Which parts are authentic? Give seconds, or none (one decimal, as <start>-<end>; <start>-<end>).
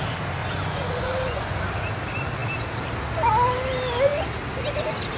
0.0-0.4; 1.6-5.2